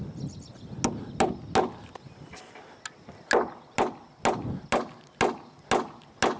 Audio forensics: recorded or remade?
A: recorded